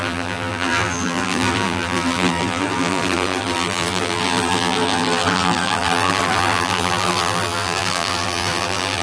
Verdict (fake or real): fake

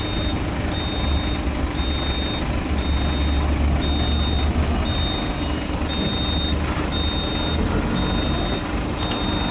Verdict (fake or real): real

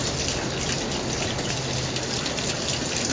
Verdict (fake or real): real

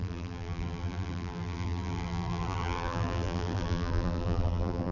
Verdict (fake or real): fake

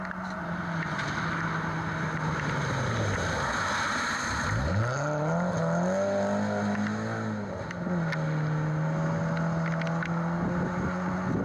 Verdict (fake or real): real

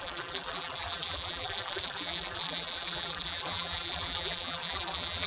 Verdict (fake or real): fake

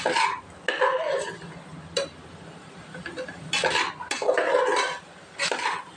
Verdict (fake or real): real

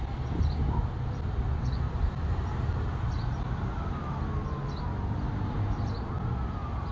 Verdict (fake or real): real